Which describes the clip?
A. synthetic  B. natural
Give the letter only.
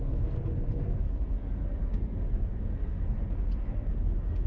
A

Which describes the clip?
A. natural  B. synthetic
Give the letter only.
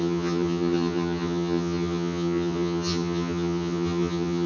B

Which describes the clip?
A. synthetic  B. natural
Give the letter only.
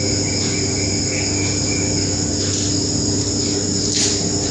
B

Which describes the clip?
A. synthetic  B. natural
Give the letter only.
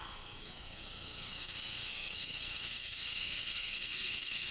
A